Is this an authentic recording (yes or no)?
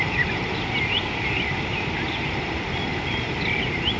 no